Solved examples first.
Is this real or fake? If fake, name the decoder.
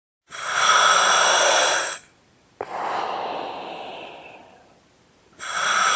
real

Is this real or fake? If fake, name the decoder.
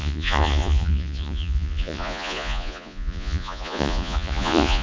fake, vocoder, Vocos